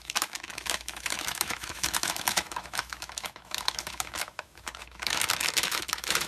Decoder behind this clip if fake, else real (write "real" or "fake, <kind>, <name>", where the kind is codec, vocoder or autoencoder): fake, autoencoder, DAC-VAE